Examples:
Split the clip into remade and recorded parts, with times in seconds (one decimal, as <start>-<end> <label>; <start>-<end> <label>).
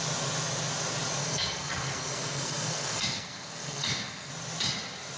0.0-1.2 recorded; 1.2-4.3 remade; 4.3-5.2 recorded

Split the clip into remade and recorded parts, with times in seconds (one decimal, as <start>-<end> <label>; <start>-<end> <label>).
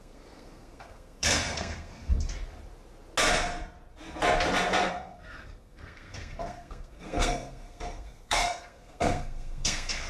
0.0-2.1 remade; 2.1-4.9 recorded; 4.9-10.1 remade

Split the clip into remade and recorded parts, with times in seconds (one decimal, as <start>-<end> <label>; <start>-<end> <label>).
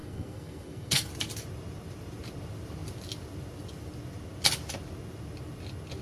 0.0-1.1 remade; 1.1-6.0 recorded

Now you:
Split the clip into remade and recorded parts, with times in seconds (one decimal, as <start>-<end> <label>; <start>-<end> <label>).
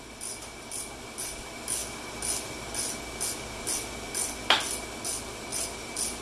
0.0-6.2 recorded